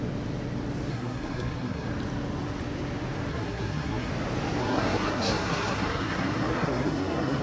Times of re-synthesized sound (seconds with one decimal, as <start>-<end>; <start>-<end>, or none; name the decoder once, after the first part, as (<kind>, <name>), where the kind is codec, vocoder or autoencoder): 0.9-1.9 (codec, SNAC); 3.3-4.1; 4.6-7.4